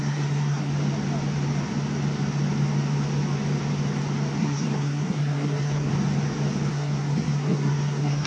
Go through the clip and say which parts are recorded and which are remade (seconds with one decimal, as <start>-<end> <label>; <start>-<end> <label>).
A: 0.0-0.7 remade; 0.7-4.4 recorded; 4.4-5.9 remade; 5.9-6.7 recorded; 6.7-8.3 remade

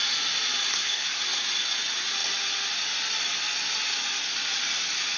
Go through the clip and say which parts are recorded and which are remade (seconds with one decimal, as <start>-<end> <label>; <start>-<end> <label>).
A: 0.0-0.7 recorded; 0.7-1.2 remade; 1.2-5.2 recorded

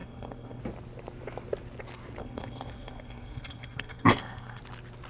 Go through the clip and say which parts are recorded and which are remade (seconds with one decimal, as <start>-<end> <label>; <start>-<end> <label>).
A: 0.0-0.6 remade; 0.6-2.2 recorded; 2.2-4.6 remade; 4.6-5.1 recorded

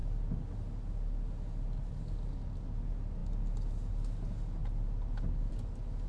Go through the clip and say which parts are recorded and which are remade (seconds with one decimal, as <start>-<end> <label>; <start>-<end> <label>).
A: 0.0-6.1 recorded

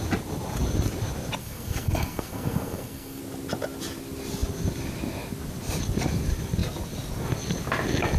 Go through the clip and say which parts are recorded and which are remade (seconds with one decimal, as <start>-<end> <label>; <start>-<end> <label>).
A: 0.0-1.4 recorded; 1.4-3.2 remade; 3.2-8.2 recorded

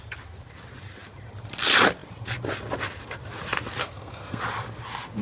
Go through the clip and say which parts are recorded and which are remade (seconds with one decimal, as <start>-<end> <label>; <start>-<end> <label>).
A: 0.0-3.8 recorded; 3.8-4.4 remade; 4.4-5.2 recorded